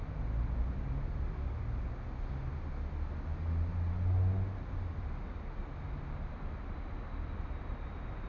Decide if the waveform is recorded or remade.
recorded